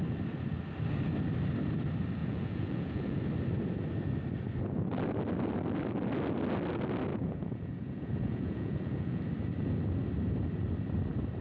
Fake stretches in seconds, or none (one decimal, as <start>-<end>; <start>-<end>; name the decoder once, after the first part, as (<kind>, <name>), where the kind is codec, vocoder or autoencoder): 2.2-3.2 (vocoder, Vocos); 7.1-9.2